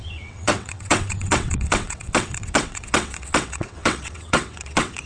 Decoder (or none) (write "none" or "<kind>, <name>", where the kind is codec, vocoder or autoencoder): vocoder, WaveNeXt